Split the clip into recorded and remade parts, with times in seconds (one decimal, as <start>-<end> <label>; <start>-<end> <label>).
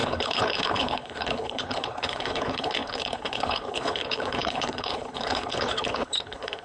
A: 0.0-6.6 remade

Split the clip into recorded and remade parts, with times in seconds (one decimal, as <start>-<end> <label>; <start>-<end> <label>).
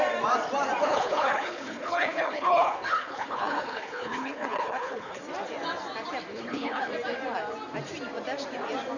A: 0.0-0.8 recorded; 0.8-5.2 remade; 5.2-6.3 recorded; 6.3-6.9 remade; 6.9-9.0 recorded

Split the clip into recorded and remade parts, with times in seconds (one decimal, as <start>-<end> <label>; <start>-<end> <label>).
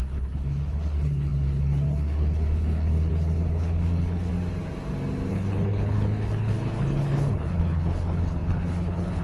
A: 0.0-4.3 remade; 4.3-5.3 recorded; 5.3-9.2 remade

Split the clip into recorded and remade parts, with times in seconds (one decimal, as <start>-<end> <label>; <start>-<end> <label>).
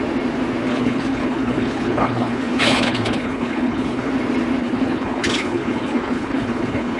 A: 0.0-0.7 recorded; 0.7-4.1 remade; 4.1-4.6 recorded; 4.6-7.0 remade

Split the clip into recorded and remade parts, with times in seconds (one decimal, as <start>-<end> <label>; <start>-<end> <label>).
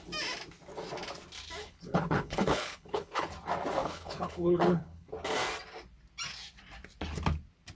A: 0.0-1.6 recorded; 1.6-3.3 remade; 3.3-3.8 recorded; 3.8-5.1 remade; 5.1-7.7 recorded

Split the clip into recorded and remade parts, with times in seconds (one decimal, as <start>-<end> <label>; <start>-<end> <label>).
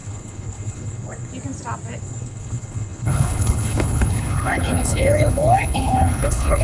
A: 0.0-1.3 remade; 1.3-2.0 recorded; 2.0-6.6 remade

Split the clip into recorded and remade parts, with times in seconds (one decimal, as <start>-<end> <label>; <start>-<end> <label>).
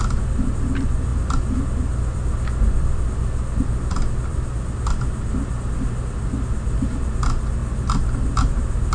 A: 0.0-8.9 recorded